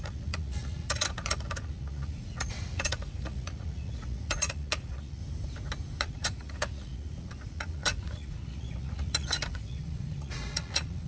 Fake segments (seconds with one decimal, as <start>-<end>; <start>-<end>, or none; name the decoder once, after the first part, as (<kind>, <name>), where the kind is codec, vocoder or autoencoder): 0.0-5.2 (vocoder, Vocos); 6.0-11.1